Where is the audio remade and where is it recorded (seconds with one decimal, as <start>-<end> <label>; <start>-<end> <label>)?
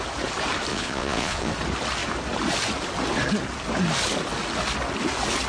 0.0-0.7 recorded; 0.7-1.5 remade; 1.5-5.5 recorded